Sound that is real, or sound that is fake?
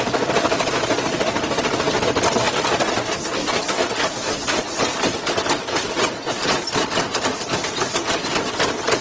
real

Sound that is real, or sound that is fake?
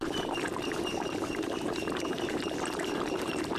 fake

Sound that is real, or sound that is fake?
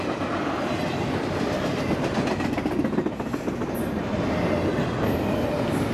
real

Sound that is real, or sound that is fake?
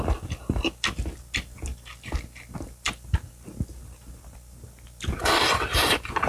real